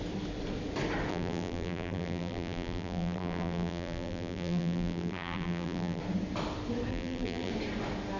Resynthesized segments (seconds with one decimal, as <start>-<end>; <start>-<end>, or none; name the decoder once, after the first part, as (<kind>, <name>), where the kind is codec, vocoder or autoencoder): 1.1-6.0 (vocoder, BigVGAN v2); 6.9-7.5